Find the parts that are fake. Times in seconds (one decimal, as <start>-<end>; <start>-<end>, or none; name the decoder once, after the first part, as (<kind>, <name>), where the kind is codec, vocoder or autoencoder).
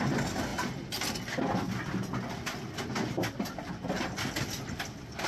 none